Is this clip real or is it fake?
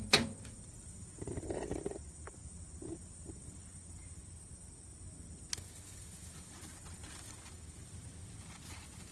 real